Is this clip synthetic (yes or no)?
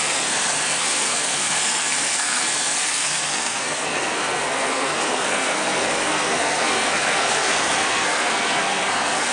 yes